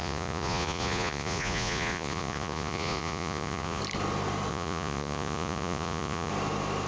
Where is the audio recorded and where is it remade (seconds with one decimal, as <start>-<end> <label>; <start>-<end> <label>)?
0.0-3.8 remade; 3.8-4.5 recorded; 4.5-6.3 remade; 6.3-6.9 recorded